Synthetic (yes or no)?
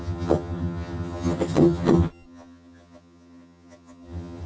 yes